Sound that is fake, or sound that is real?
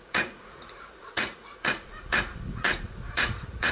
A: fake